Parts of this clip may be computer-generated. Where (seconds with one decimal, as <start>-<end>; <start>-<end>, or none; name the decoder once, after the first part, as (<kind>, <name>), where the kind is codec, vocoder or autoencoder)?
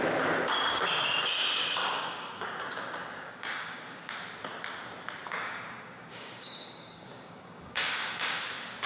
1.8-4.1 (codec, DAC); 5.3-8.4